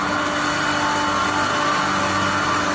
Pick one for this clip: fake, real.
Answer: real